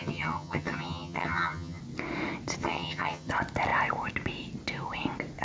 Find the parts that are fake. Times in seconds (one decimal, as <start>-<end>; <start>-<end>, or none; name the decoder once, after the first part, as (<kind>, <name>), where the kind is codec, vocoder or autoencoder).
0.0-1.8 (vocoder, HiFi-GAN); 2.6-3.3